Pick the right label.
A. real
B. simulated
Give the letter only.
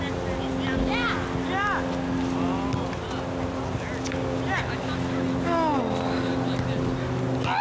A